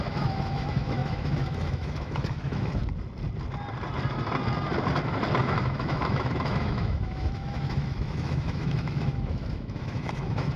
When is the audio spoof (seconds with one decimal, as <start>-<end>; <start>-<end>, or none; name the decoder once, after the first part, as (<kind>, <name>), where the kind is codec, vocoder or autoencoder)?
0.0-2.8 (autoencoder, DAC-VAE); 5.4-10.6

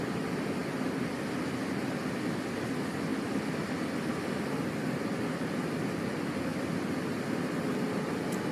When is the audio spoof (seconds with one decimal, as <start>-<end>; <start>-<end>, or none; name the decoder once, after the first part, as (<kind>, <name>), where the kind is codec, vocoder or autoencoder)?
none

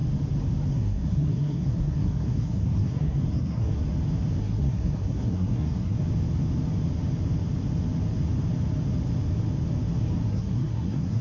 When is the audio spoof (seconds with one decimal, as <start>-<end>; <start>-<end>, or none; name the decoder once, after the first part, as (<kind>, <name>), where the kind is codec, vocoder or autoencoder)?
0.7-3.8 (codec, SNAC); 4.4-6.0; 10.3-11.2

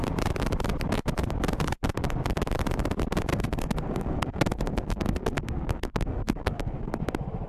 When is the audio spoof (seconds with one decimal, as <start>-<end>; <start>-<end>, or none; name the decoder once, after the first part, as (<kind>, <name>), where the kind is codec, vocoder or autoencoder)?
3.3-7.0 (codec, SNAC)

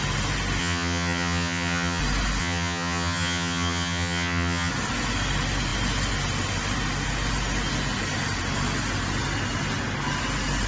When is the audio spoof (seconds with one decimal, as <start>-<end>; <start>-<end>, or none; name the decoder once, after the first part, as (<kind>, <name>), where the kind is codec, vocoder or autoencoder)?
0.6-2.0 (vocoder, HiFi-GAN); 2.4-4.7